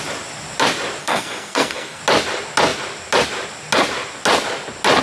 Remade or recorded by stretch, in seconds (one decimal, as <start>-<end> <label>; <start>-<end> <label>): 0.0-1.0 recorded; 1.0-2.0 remade; 2.0-5.0 recorded